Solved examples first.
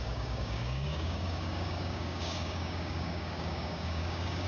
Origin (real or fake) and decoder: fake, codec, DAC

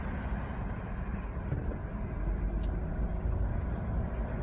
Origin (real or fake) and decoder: real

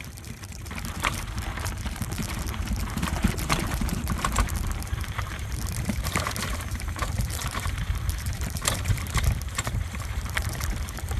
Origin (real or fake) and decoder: fake, vocoder, BigVGAN v2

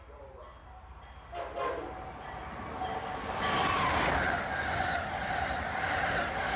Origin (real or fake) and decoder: real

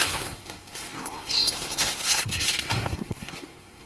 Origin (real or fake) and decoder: fake, codec, SNAC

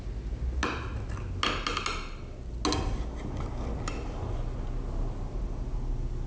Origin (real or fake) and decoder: real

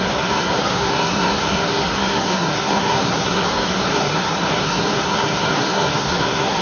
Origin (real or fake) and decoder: fake, codec, SNAC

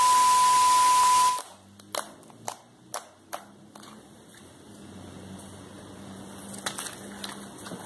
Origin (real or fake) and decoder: real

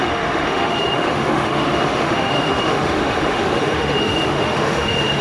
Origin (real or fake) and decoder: fake, autoencoder, DAC-VAE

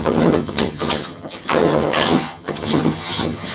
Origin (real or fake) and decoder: fake, vocoder, HiFi-GAN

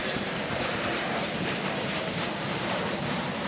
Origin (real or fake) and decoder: fake, vocoder, BigVGAN v2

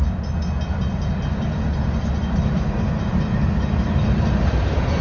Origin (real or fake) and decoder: real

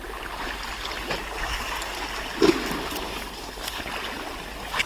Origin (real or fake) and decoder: real